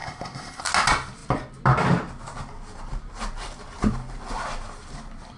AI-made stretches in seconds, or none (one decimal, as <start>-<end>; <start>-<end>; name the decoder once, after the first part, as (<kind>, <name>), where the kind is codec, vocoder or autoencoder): 0.0-0.6 (codec, SNAC)